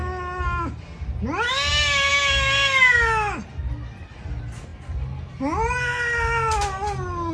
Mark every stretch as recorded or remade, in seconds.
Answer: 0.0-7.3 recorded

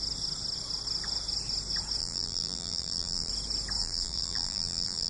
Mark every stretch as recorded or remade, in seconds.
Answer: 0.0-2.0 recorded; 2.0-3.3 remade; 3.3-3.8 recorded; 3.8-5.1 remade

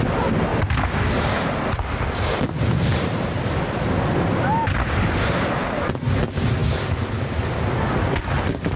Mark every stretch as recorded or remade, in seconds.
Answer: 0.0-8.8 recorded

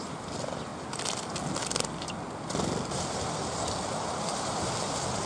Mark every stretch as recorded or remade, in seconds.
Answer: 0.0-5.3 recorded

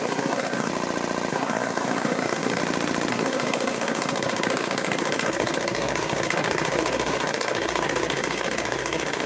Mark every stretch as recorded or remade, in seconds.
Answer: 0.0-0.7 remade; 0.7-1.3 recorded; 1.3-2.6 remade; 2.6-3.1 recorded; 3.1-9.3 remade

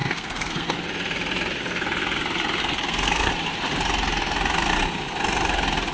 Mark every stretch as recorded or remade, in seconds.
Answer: 0.0-0.7 remade; 0.7-2.6 recorded; 2.6-3.3 remade; 3.3-5.9 recorded